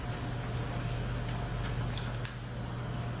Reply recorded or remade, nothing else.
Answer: recorded